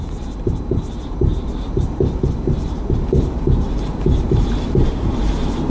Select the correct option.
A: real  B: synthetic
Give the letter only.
B